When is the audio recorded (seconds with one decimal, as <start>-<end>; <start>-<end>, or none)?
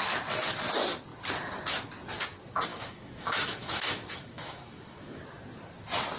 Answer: 0.0-2.7; 5.2-6.2